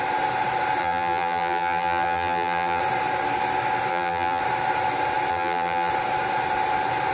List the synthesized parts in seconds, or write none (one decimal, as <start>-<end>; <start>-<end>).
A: 0.8-2.8; 3.9-4.4; 5.3-5.9